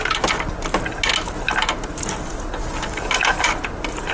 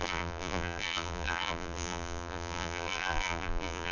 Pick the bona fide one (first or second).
first